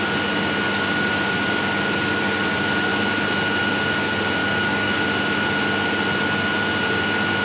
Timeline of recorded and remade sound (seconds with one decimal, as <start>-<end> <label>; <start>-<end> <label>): 0.0-4.4 recorded; 4.4-5.0 remade; 5.0-7.4 recorded